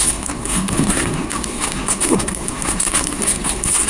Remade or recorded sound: remade